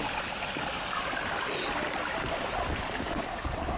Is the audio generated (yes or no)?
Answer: no